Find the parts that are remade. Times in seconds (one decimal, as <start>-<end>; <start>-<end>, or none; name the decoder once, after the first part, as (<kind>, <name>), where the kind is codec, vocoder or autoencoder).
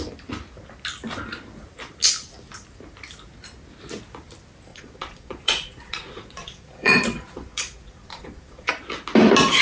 4.7-8.7 (vocoder, Vocos)